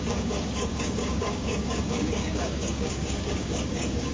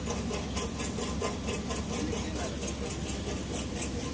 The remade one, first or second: first